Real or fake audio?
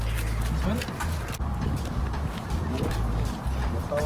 real